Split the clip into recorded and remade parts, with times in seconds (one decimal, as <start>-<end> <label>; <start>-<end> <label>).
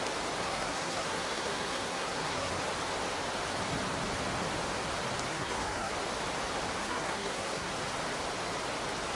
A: 0.0-0.4 recorded; 0.4-2.5 remade; 2.5-5.3 recorded; 5.3-5.9 remade; 5.9-6.8 recorded; 6.8-7.7 remade; 7.7-9.2 recorded